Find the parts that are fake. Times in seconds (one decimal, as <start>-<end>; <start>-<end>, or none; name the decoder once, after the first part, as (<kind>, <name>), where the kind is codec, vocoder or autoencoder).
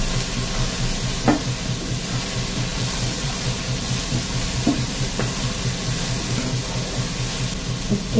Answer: 2.7-5.6 (vocoder, BigVGAN v2)